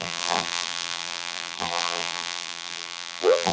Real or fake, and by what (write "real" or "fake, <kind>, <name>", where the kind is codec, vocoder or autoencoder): fake, vocoder, BigVGAN v2